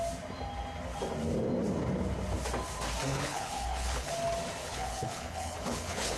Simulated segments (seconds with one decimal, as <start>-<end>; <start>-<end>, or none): 3.1-4.1; 4.6-6.2